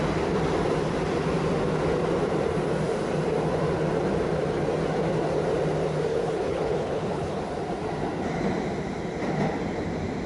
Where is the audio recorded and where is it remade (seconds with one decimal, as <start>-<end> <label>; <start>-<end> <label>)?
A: 0.0-6.1 recorded; 6.1-7.4 remade; 7.4-10.3 recorded